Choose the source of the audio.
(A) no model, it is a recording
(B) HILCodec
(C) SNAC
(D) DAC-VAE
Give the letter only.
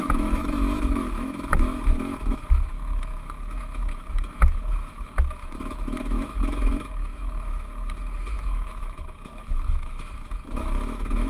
D